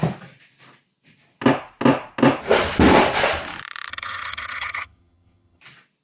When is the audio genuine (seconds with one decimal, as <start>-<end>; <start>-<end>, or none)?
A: 0.0-3.9; 5.6-6.0